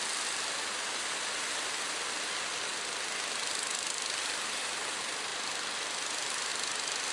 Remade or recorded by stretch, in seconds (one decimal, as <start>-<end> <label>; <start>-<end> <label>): 0.0-7.1 recorded